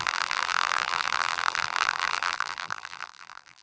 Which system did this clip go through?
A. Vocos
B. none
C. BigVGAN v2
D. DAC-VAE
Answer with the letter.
C